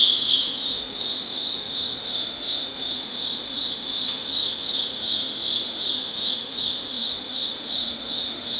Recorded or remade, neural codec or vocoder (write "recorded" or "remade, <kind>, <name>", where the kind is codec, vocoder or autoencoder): remade, autoencoder, DAC-VAE